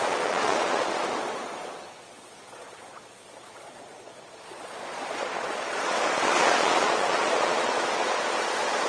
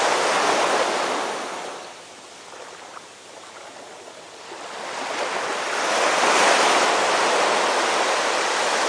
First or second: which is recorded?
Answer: second